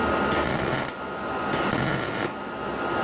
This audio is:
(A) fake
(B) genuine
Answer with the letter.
B